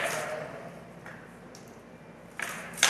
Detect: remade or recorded recorded